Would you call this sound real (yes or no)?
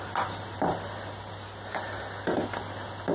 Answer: yes